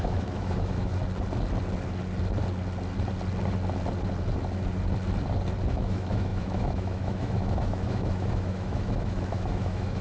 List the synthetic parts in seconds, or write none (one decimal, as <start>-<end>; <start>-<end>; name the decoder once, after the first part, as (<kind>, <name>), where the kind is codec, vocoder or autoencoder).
0.0-0.9 (autoencoder, DAC-VAE); 5.7-10.0